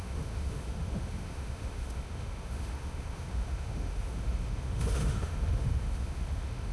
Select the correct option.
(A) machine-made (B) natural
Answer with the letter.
A